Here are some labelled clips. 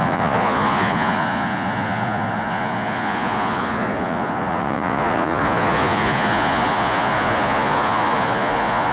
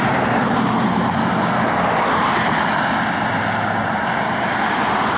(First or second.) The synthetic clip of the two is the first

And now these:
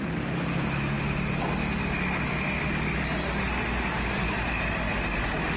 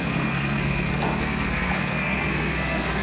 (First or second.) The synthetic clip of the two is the second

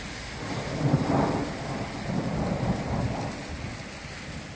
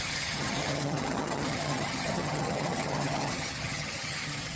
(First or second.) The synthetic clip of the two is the second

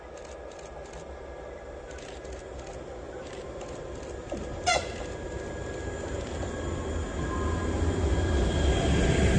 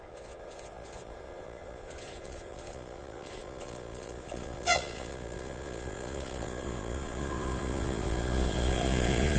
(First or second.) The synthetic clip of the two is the second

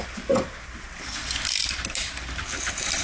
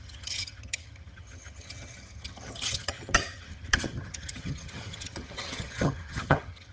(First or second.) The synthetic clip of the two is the second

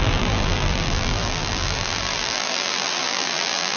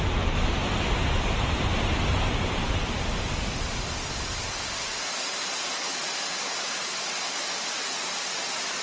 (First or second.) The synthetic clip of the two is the first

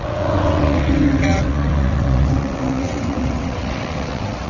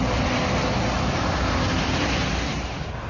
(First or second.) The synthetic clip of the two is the first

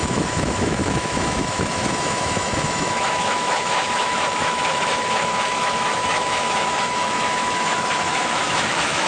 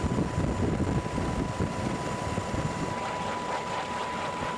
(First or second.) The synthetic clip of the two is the first